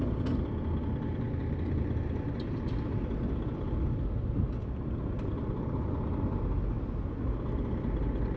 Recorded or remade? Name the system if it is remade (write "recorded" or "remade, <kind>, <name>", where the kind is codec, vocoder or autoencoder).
recorded